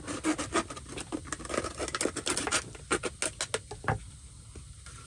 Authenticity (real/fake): real